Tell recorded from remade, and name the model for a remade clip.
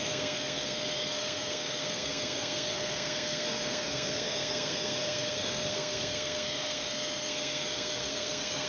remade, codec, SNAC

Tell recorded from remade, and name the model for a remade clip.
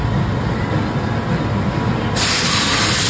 recorded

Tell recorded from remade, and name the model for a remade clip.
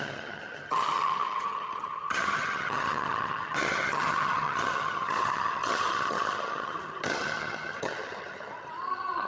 remade, vocoder, HiFi-GAN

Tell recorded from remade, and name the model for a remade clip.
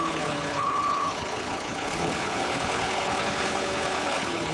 remade, codec, HILCodec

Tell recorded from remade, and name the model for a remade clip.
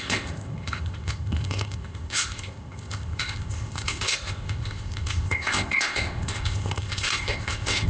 remade, codec, ZipCodec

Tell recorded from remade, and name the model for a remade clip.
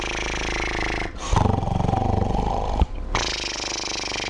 recorded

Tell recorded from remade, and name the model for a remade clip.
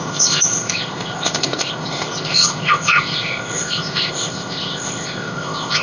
remade, codec, ZipCodec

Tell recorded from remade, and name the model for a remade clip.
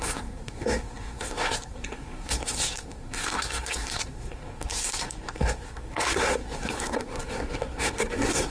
remade, codec, SNAC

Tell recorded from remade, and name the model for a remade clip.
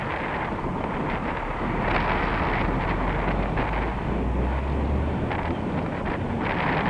recorded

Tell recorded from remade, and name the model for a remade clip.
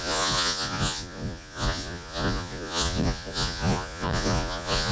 remade, vocoder, Vocos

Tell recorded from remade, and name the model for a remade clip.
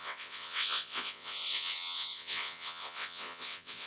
remade, vocoder, WaveNeXt